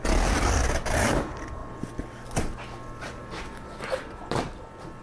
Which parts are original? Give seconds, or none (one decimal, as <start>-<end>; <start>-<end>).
0.0-5.0